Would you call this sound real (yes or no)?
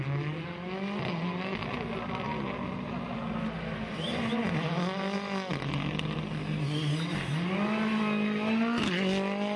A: yes